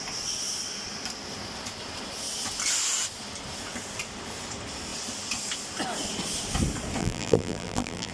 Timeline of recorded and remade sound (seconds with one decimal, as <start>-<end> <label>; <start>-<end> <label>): 0.0-7.0 recorded; 7.0-8.1 remade